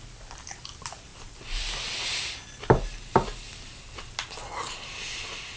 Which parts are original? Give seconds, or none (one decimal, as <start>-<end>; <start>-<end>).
0.0-5.6